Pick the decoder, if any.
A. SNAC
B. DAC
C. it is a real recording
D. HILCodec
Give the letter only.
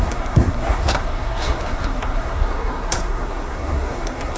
A